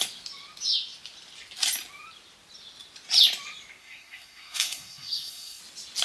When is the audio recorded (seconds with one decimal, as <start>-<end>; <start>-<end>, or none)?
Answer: 0.0-3.8; 5.6-6.0